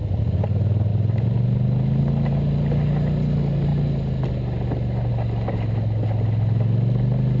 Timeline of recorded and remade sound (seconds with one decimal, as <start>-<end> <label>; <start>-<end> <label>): 0.0-7.4 recorded